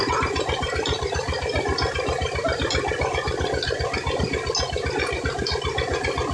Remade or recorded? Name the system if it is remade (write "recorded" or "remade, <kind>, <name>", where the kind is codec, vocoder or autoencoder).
recorded